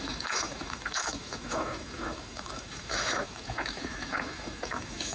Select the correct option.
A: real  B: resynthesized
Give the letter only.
B